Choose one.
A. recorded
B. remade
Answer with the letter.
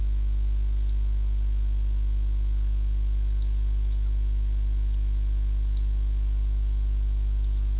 A